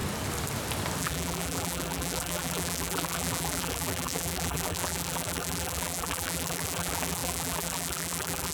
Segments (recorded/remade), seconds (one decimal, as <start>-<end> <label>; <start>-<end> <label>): 0.0-1.0 recorded; 1.0-8.5 remade